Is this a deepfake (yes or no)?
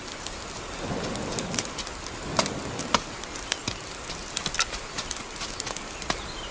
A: no